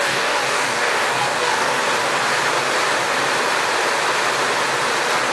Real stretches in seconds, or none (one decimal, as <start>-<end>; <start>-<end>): 1.8-5.3